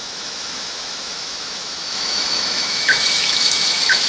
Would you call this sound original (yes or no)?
no